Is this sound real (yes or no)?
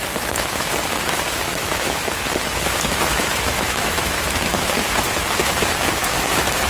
no